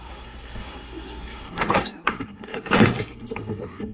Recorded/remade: remade